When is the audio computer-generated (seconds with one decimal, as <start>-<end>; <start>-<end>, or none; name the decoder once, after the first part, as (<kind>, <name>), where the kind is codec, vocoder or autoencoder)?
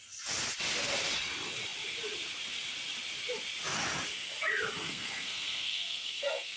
4.8-6.6 (codec, SNAC)